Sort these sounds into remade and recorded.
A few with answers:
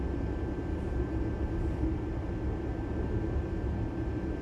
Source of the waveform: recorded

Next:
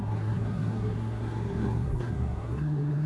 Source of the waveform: remade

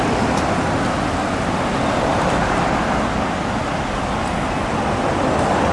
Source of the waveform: recorded